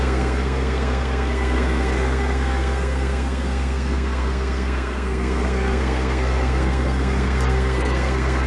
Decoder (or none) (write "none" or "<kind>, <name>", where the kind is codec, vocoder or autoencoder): codec, SNAC